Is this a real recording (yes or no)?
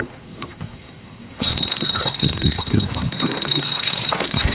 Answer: no